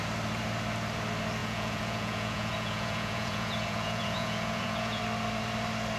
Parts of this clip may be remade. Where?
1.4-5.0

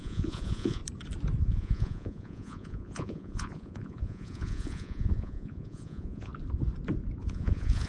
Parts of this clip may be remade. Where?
0.0-0.8; 1.4-6.3; 7.2-7.9

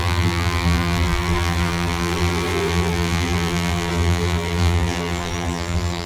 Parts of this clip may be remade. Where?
0.0-6.1

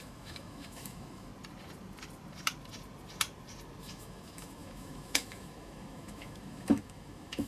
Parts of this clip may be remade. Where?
0.0-1.3; 3.8-7.5

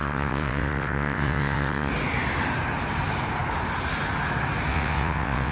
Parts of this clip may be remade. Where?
0.0-1.9; 4.7-5.5